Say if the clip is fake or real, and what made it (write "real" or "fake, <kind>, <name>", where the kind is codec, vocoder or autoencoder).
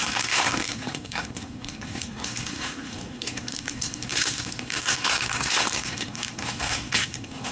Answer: fake, codec, SNAC